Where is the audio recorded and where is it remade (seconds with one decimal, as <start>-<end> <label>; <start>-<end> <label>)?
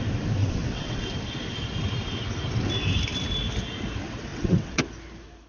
0.0-0.4 recorded; 0.4-1.0 remade; 1.0-4.3 recorded; 4.3-4.8 remade; 4.8-5.5 recorded